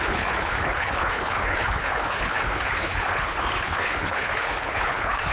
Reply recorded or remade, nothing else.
remade